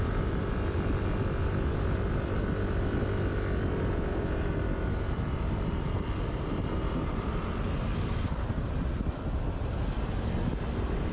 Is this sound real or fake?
real